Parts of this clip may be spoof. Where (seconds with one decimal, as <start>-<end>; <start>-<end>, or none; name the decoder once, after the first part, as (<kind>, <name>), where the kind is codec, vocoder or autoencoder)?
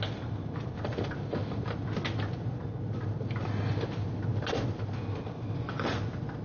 none